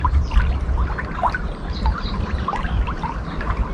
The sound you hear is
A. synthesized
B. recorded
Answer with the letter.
B